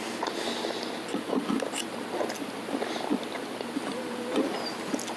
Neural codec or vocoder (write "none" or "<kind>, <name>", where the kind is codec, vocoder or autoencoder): none